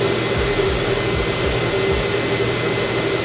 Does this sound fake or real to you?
real